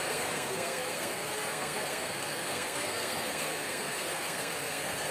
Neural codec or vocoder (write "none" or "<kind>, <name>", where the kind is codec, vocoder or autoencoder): codec, SNAC